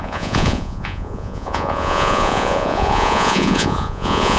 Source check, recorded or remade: remade